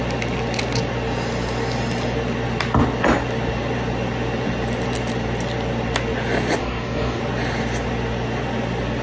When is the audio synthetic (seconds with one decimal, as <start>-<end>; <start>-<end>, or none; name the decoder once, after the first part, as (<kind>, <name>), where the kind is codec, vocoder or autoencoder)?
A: 6.6-7.2 (codec, DAC)